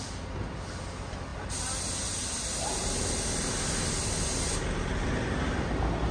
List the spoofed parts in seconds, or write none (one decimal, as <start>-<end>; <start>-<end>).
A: none